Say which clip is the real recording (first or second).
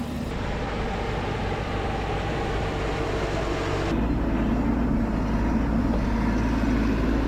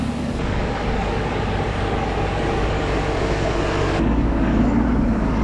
first